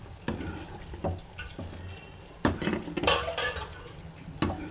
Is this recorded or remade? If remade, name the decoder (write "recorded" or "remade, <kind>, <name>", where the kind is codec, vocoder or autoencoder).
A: recorded